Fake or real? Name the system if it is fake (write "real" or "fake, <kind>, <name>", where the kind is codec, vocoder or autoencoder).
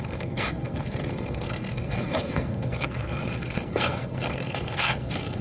fake, codec, SNAC